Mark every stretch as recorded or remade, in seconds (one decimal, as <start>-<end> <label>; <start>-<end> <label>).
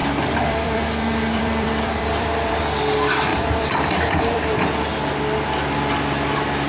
0.0-2.6 remade; 2.6-3.3 recorded; 3.3-4.6 remade; 4.6-6.7 recorded